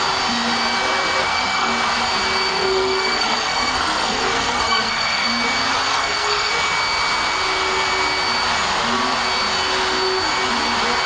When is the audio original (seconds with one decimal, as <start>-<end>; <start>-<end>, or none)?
0.0-1.2; 1.7-2.5; 5.3-5.9; 6.5-11.1